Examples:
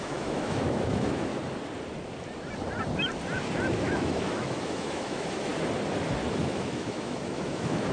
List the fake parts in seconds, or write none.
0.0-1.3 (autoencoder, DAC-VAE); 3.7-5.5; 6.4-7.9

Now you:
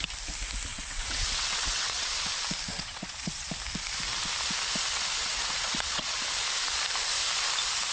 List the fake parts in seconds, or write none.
0.7-2.1 (vocoder, WaveNeXt); 2.7-3.5; 5.2-6.2

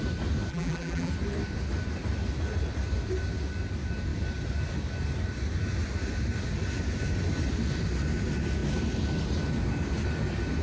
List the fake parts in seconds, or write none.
0.5-1.1 (vocoder, BigVGAN v2)

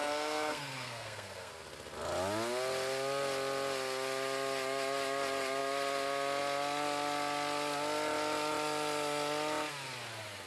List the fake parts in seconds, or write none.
0.0-1.5 (codec, SNAC)

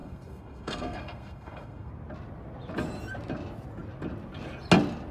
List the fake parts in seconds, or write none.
0.0-1.9 (codec, SNAC)